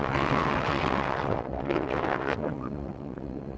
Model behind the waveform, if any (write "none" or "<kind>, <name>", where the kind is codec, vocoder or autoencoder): vocoder, WaveNeXt